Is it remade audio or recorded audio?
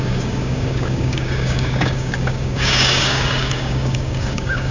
remade